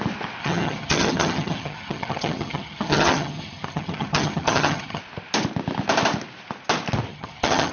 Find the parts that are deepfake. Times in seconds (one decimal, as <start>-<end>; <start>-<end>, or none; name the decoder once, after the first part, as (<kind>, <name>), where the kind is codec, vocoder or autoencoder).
0.4-5.0 (vocoder, HiFi-GAN); 7.1-7.7

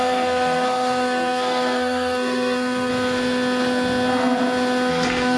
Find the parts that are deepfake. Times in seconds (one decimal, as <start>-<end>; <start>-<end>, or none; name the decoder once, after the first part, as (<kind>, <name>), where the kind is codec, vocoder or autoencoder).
0.0-2.9 (codec, SNAC); 4.9-5.4

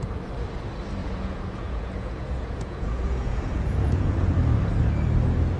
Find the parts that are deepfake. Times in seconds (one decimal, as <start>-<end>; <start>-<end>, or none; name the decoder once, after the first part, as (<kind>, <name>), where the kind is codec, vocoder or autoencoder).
1.0-4.4 (vocoder, Vocos)

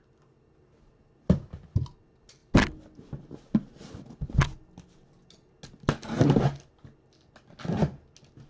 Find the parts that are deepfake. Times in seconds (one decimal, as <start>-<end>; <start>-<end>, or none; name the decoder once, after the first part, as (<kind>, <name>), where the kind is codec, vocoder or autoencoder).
none

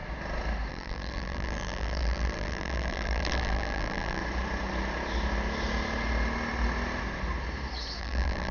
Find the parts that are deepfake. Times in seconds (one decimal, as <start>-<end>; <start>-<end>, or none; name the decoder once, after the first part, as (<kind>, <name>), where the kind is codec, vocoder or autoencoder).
0.7-4.2 (vocoder, BigVGAN v2); 8.0-8.5

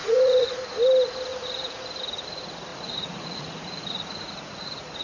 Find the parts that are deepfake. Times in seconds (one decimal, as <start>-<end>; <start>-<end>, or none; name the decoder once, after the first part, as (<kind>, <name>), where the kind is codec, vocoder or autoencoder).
0.0-0.6 (vocoder, Vocos); 1.3-1.8; 2.7-5.0

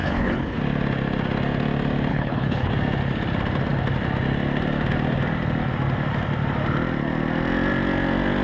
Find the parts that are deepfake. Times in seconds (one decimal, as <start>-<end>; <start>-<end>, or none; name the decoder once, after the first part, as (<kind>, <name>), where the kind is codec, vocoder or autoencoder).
0.0-0.6 (codec, HILCodec); 2.1-2.7